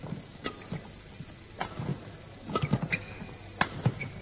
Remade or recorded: recorded